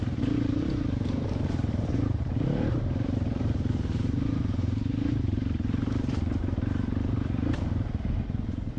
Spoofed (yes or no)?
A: yes